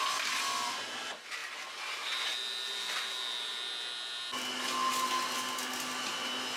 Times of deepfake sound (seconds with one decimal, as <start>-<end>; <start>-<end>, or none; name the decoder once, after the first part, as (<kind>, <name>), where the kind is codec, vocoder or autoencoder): none